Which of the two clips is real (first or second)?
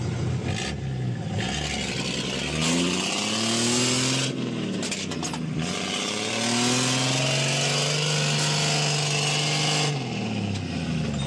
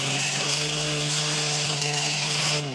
first